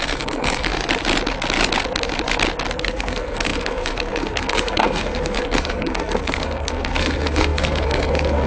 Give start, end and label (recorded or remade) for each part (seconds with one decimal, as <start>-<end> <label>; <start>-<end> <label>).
0.0-0.7 remade; 0.7-2.8 recorded; 2.8-8.5 remade